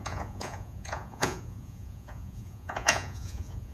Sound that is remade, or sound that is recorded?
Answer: remade